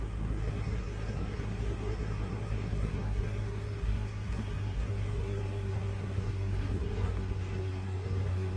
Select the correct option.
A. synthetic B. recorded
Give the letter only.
A